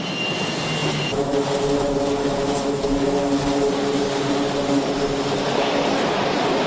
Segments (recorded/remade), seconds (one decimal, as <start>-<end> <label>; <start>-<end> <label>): 0.0-6.7 recorded